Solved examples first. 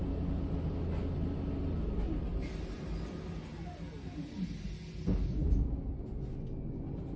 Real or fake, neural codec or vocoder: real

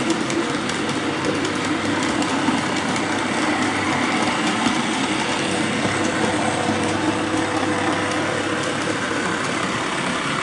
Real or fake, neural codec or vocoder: real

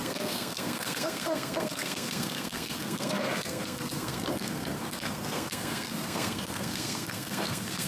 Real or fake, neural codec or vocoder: fake, codec, SNAC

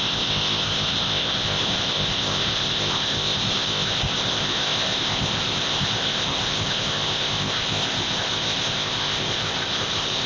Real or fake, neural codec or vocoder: fake, codec, ZipCodec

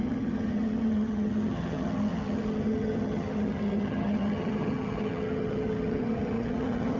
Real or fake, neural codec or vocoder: fake, vocoder, HiFi-GAN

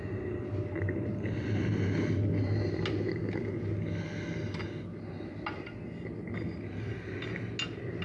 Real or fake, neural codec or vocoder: real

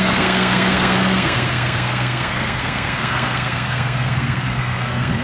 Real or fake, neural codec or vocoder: fake, codec, SNAC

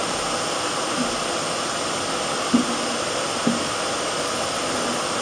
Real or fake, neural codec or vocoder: real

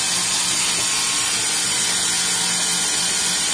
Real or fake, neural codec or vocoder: real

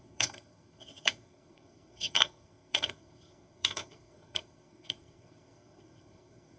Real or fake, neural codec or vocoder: fake, codec, SNAC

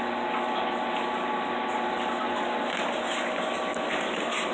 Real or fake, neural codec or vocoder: real